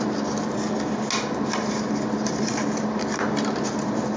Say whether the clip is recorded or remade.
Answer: recorded